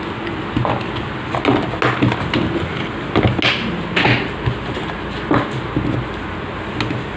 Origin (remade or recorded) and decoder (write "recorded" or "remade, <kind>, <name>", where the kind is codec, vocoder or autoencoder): recorded